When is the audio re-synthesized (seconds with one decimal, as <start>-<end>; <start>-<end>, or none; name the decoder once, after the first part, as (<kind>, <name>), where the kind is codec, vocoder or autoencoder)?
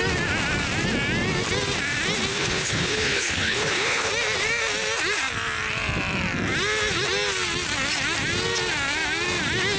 2.3-4.1 (codec, HILCodec)